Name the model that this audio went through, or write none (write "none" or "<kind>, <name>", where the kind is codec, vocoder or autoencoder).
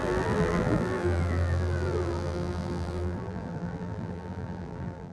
vocoder, BigVGAN v2